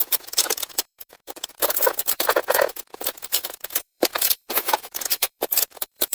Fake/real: fake